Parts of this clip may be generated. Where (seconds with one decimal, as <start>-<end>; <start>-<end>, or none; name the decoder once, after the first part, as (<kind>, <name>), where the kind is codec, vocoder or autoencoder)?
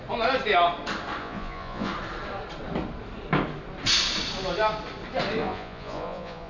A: 1.2-1.9 (vocoder, Vocos); 5.4-6.5